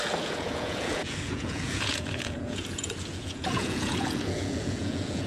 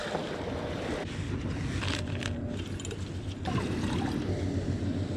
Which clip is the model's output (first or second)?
first